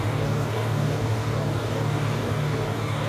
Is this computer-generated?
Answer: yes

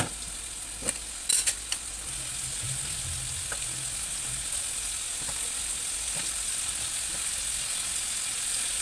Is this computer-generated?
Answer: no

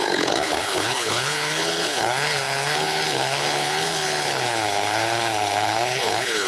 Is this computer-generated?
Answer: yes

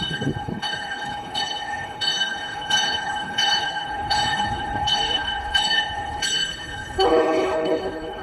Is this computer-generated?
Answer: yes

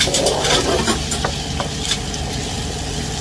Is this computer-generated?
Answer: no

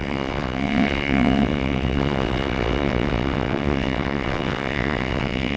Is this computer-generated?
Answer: yes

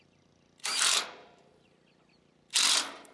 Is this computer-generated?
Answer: no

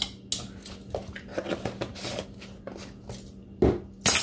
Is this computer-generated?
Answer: no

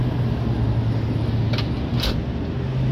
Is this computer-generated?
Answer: no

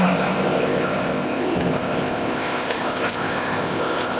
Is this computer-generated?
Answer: yes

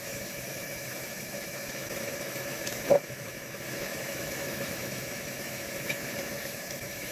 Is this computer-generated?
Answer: yes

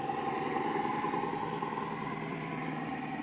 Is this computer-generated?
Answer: yes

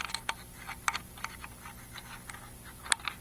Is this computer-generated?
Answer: no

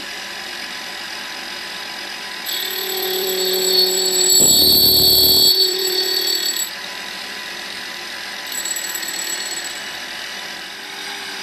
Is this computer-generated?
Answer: yes